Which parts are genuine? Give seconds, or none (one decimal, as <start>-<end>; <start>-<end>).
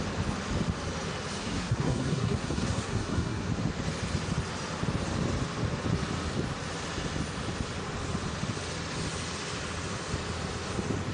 0.0-1.4; 3.5-11.1